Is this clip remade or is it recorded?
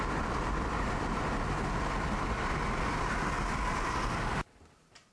recorded